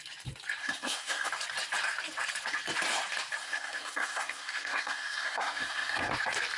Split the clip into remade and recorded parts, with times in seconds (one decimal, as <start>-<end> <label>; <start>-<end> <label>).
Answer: 0.0-0.6 recorded; 0.6-1.3 remade; 1.3-3.4 recorded; 3.4-6.1 remade; 6.1-6.6 recorded